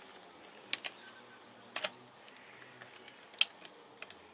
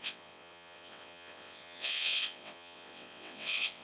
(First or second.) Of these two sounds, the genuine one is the first